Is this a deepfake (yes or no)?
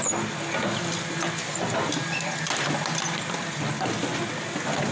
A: no